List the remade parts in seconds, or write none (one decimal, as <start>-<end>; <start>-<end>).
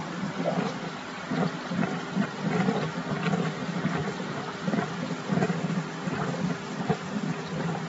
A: none